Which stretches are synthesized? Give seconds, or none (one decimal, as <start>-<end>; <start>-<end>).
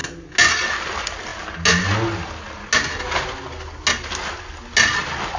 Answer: none